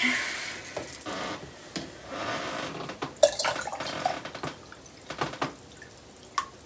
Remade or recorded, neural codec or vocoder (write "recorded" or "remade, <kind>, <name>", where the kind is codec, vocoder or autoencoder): recorded